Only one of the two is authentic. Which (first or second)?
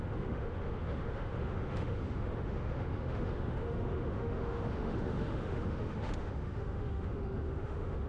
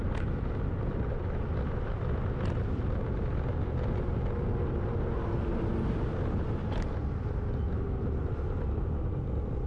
second